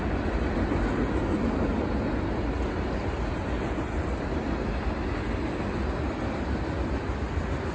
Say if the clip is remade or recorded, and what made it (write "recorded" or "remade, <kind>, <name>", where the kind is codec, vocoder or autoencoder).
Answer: recorded